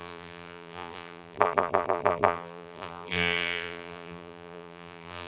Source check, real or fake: fake